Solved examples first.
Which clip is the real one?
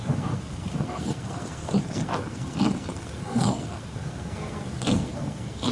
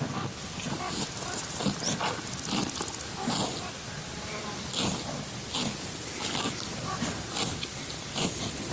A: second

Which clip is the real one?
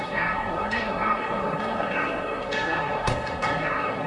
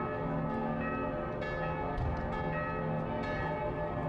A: second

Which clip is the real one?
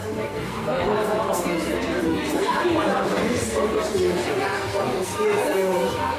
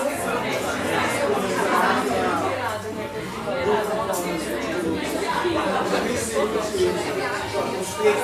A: second